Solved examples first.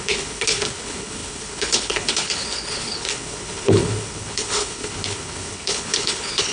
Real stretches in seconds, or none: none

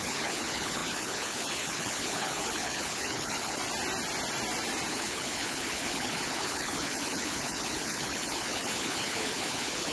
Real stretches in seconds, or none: 3.6-4.9

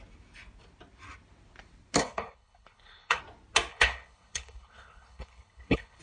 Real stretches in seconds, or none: 0.0-2.0; 3.2-3.7